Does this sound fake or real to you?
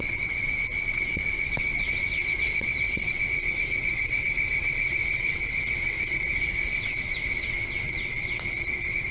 fake